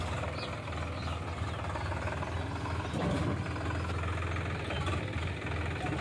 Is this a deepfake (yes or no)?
no